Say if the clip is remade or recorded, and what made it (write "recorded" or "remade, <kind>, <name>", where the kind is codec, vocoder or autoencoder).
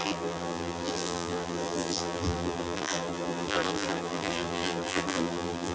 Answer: remade, vocoder, BigVGAN v2